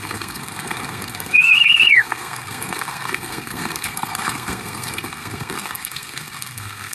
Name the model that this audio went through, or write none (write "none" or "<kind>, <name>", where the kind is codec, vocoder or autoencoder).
codec, SNAC